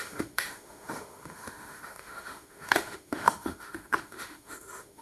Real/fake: fake